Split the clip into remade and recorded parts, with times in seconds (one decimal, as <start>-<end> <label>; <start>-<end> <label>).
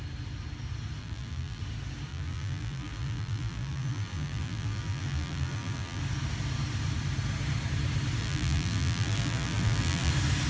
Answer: 0.0-1.0 recorded; 1.0-1.6 remade; 1.6-2.1 recorded; 2.1-6.0 remade; 6.0-8.2 recorded; 8.2-10.1 remade; 10.1-10.5 recorded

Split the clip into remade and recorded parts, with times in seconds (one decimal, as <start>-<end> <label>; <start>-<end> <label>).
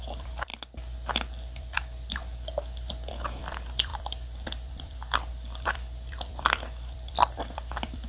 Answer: 0.0-0.5 remade; 0.5-1.6 recorded; 1.6-2.2 remade; 2.2-2.9 recorded; 2.9-8.1 remade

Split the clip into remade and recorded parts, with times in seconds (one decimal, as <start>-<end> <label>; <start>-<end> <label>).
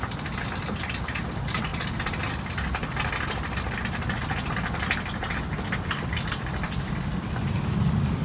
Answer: 0.0-8.2 recorded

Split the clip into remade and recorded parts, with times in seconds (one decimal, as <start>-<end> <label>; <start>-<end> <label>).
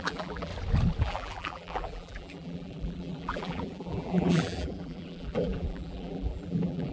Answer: 0.0-0.5 remade; 0.5-1.0 recorded; 1.0-6.9 remade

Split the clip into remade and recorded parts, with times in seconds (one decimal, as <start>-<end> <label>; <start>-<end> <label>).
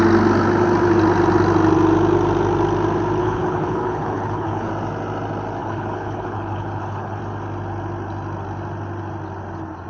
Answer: 0.0-3.2 recorded; 3.2-4.7 remade; 4.7-5.6 recorded; 5.6-7.2 remade; 7.2-9.9 recorded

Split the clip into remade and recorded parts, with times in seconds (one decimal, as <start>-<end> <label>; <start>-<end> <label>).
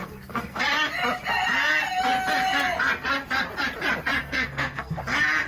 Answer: 0.0-0.6 remade; 0.6-4.2 recorded; 4.2-5.0 remade; 5.0-5.5 recorded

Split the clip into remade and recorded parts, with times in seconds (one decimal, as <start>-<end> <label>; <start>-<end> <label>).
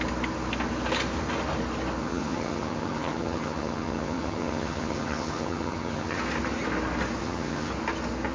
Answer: 0.0-2.0 recorded; 2.0-6.2 remade; 6.2-7.2 recorded; 7.2-7.7 remade; 7.7-8.3 recorded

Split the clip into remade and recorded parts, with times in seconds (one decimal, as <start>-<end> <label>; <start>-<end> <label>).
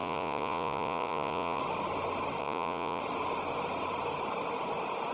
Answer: 0.0-1.6 remade; 1.6-2.4 recorded; 2.4-3.0 remade; 3.0-5.1 recorded